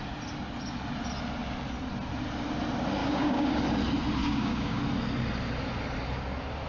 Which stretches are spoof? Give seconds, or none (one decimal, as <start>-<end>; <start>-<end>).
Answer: 3.0-3.6; 4.2-4.8